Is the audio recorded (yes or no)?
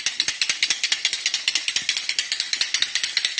yes